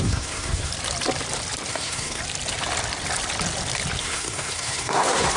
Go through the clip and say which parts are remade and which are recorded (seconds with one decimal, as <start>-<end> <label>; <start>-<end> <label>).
0.0-0.7 remade; 0.7-1.7 recorded; 1.7-2.2 remade; 2.2-4.0 recorded; 4.0-5.4 remade